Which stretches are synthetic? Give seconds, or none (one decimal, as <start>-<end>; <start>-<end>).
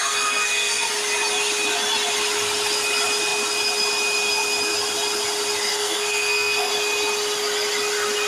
0.0-0.9; 5.7-6.7